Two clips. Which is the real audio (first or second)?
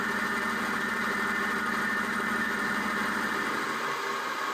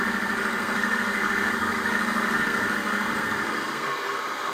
first